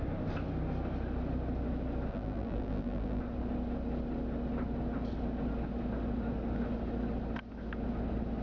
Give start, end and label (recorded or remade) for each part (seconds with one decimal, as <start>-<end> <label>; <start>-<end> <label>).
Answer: 0.0-2.1 recorded; 2.1-3.2 remade; 3.2-8.4 recorded

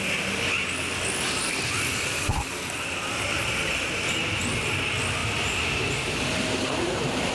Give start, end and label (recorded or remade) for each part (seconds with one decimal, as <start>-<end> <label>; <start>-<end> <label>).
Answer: 0.0-5.2 recorded; 5.2-7.3 remade

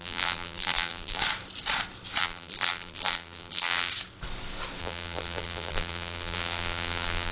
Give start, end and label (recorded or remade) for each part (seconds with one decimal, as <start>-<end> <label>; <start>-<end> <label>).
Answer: 0.0-1.2 remade; 1.2-2.2 recorded; 2.2-3.9 remade; 3.9-4.8 recorded; 4.8-7.3 remade

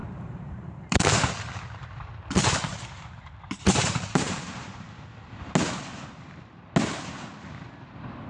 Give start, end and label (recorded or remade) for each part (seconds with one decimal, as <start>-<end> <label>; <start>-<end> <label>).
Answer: 0.0-1.3 remade; 1.3-2.7 recorded; 2.7-4.9 remade; 4.9-8.3 recorded

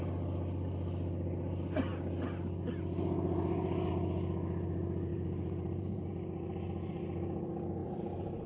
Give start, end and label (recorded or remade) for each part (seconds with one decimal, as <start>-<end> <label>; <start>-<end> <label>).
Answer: 0.0-5.1 recorded; 5.1-6.1 remade; 6.1-7.8 recorded; 7.8-8.5 remade

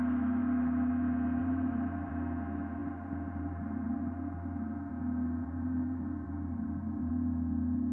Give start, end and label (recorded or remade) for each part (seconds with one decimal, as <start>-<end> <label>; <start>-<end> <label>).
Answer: 0.0-1.4 recorded; 1.4-2.1 remade; 2.1-2.8 recorded; 2.8-4.9 remade; 4.9-5.4 recorded; 5.4-7.1 remade; 7.1-7.9 recorded